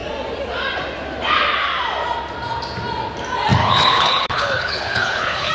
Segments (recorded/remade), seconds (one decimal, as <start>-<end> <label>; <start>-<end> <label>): 0.0-3.6 recorded; 3.6-5.5 remade